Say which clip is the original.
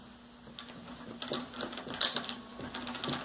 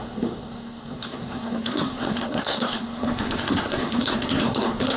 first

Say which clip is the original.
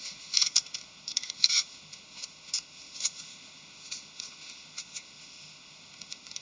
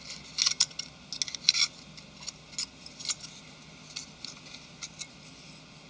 second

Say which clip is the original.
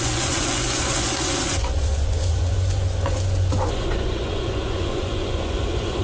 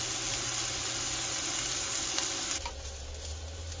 second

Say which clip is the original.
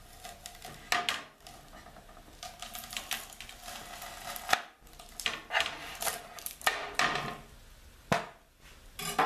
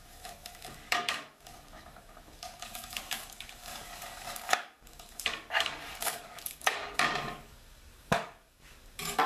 first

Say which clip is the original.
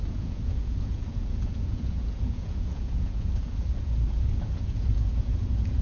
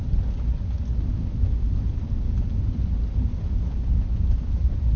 second